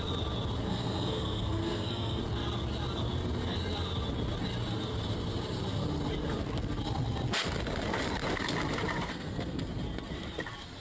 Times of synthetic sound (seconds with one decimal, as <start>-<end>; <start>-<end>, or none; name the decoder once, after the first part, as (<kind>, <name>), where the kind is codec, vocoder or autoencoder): 0.7-2.2 (codec, SNAC); 9.1-9.6